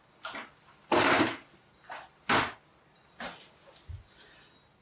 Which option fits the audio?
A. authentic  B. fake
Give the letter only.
A